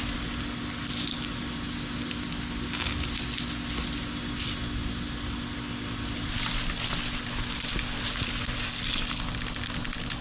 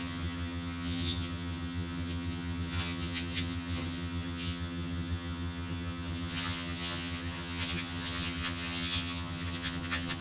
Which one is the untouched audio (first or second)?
first